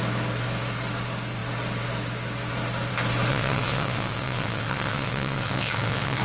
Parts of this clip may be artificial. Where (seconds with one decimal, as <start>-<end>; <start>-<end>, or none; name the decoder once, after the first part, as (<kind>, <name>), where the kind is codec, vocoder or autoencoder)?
3.3-6.2 (vocoder, WaveNeXt)